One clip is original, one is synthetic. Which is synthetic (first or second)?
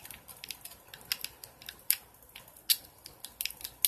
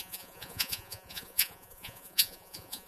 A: second